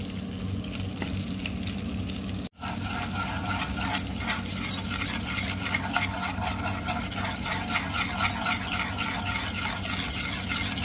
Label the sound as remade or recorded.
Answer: recorded